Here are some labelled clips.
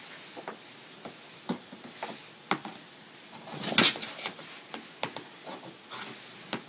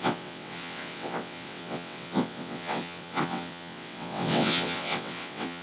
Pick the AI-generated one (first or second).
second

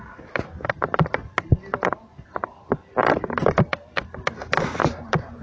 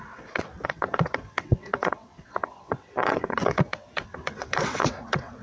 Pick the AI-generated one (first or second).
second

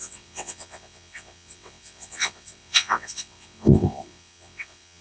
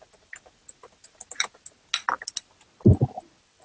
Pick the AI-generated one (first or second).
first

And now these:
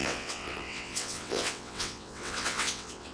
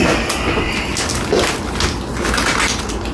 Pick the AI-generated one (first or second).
first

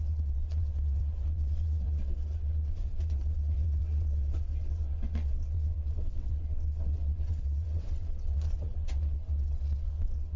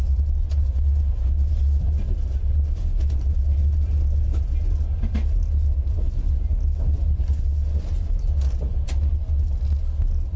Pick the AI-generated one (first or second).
first